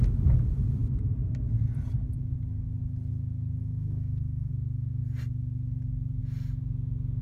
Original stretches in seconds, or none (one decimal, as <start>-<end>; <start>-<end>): 0.0-3.6; 4.5-7.2